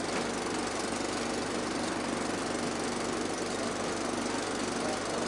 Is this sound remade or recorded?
recorded